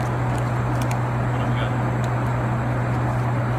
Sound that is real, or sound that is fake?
real